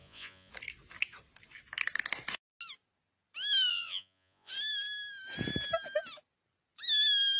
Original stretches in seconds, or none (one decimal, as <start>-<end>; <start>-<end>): 0.5-3.7; 4.5-7.4